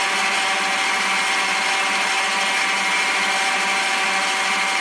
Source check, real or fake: fake